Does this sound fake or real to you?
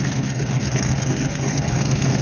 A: fake